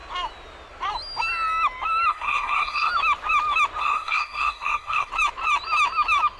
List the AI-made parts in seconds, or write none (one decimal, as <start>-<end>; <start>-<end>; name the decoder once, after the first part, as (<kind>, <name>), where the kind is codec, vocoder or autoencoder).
2.1-2.9 (codec, SNAC); 3.8-5.1